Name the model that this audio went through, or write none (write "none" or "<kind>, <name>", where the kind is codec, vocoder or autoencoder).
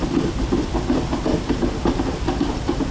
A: none